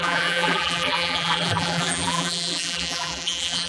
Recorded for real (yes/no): no